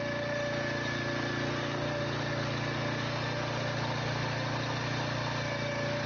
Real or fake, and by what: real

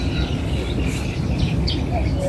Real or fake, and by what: real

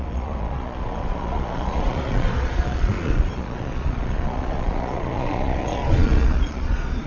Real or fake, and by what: fake, vocoder, Vocos